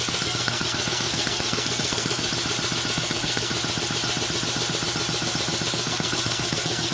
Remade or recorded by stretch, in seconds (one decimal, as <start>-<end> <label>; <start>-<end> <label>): 0.0-2.3 remade; 2.3-2.9 recorded; 2.9-3.5 remade; 3.5-5.7 recorded; 5.7-6.9 remade